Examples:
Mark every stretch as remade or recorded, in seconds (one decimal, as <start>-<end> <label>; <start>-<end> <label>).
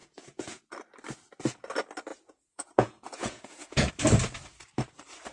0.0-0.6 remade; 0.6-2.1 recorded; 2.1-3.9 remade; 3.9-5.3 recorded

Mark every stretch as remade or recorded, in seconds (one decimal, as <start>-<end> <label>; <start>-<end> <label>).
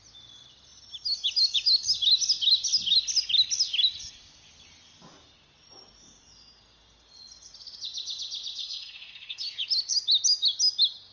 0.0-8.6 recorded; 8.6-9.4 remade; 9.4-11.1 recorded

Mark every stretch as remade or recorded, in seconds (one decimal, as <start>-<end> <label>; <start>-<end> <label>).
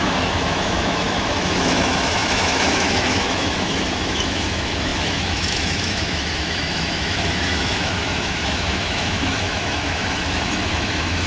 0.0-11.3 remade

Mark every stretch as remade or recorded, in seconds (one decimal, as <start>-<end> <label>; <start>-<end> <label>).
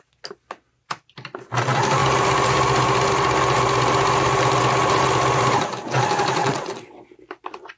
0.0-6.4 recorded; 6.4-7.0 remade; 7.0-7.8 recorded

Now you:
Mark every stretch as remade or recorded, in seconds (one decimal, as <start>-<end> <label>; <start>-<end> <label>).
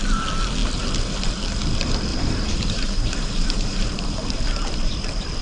0.0-2.1 recorded; 2.1-5.4 remade